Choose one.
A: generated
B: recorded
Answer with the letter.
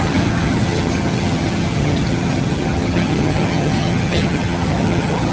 A